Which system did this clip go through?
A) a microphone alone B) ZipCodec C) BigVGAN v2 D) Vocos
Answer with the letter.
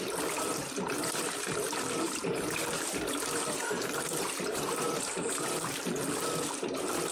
C